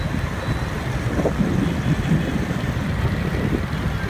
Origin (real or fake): real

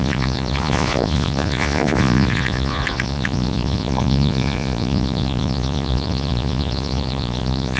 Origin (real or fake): fake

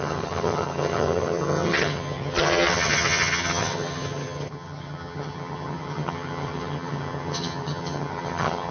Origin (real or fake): fake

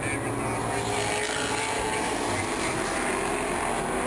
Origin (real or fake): real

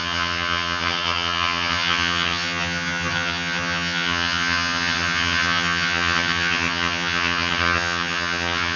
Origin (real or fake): fake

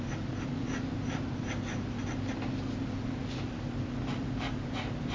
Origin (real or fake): real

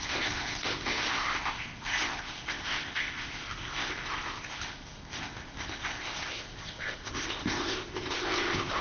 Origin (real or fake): fake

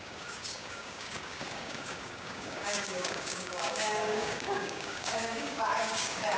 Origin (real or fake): fake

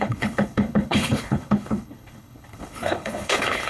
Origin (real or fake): fake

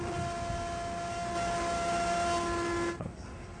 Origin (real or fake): real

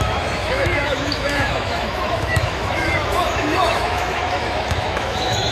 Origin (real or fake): fake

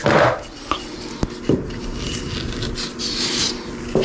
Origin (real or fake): real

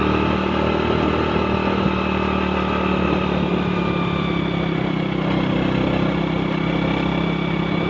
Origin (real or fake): real